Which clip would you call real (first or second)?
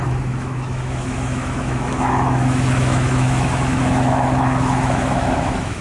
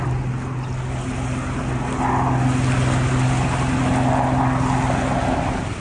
second